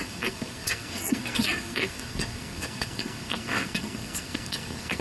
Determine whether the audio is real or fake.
fake